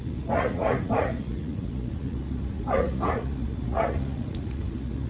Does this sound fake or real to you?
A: fake